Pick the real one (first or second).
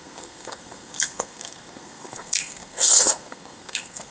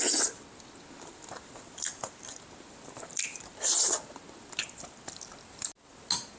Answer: second